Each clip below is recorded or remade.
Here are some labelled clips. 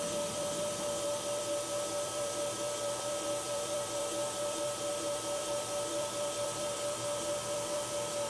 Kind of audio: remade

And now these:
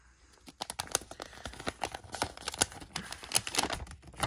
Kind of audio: recorded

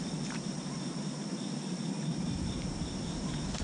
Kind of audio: remade